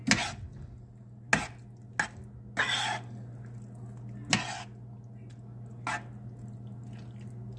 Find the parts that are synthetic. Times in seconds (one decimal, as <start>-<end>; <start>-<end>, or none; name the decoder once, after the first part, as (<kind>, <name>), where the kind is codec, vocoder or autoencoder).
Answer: none